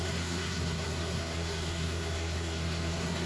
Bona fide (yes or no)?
no